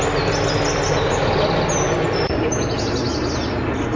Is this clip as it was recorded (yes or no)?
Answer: yes